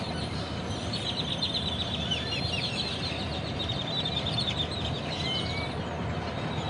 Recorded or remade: recorded